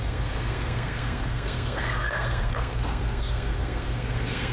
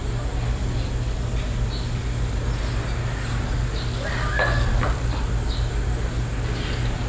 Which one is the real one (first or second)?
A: second